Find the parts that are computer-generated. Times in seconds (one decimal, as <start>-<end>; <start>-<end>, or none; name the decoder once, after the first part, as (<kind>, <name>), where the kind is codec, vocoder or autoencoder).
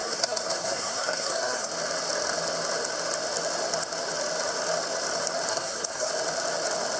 0.0-1.7 (codec, SNAC); 5.5-6.1